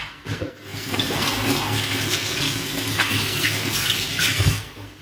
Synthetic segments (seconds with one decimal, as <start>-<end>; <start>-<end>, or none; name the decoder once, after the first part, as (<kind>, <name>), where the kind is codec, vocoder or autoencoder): 0.0-5.0 (codec, SNAC)